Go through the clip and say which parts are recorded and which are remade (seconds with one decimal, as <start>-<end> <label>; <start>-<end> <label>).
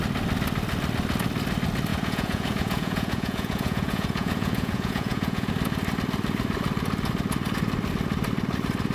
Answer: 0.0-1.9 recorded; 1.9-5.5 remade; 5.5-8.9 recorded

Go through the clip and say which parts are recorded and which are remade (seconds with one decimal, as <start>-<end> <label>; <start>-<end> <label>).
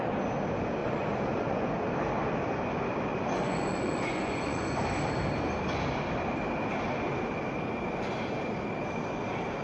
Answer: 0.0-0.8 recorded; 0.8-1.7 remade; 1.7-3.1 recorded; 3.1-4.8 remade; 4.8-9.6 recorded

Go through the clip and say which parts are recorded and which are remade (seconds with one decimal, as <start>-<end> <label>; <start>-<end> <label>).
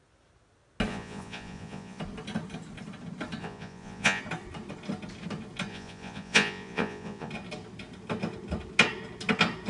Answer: 0.0-0.9 recorded; 0.9-2.0 remade; 2.0-3.4 recorded; 3.4-4.2 remade; 4.2-5.7 recorded; 5.7-7.3 remade; 7.3-9.7 recorded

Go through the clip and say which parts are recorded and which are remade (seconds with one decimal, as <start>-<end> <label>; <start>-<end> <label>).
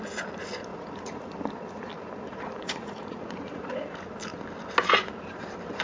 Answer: 0.0-0.7 recorded; 0.7-1.4 remade; 1.4-2.3 recorded; 2.3-3.7 remade; 3.7-5.8 recorded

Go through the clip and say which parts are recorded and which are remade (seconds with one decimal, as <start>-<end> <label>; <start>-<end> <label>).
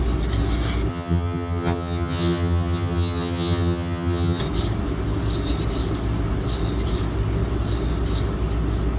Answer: 0.0-0.9 recorded; 0.9-4.4 remade; 4.4-9.0 recorded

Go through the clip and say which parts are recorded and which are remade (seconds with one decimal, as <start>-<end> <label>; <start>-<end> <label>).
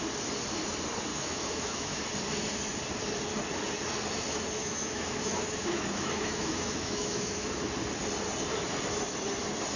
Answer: 0.0-1.1 recorded; 1.1-2.0 remade; 2.0-4.6 recorded; 4.6-7.5 remade; 7.5-9.8 recorded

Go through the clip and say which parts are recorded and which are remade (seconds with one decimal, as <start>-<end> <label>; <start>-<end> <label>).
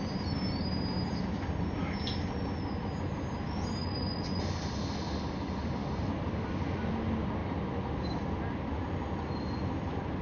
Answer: 0.0-3.8 recorded; 3.8-4.4 remade; 4.4-10.2 recorded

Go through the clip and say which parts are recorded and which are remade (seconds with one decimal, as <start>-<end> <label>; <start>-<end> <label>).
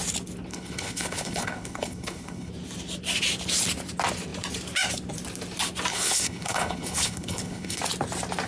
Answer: 0.0-0.5 recorded; 0.5-2.5 remade; 2.5-5.9 recorded; 5.9-7.8 remade; 7.8-8.5 recorded